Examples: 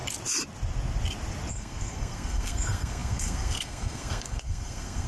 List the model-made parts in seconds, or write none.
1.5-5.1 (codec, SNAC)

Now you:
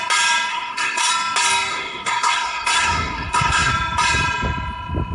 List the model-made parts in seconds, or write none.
0.5-1.1 (codec, SNAC); 1.7-3.7

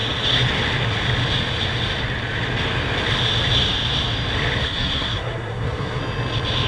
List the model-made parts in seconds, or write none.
4.6-6.0 (codec, SNAC)